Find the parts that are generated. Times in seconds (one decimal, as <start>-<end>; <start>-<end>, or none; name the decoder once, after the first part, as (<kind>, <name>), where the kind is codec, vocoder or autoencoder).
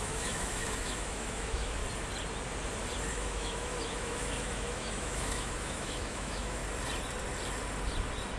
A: 0.0-1.8 (autoencoder, DAC-VAE); 3.1-6.6